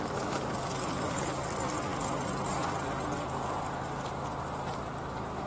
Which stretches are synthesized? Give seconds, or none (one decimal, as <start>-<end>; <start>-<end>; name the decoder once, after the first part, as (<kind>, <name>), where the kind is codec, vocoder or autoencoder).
none